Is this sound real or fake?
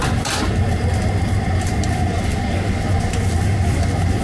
real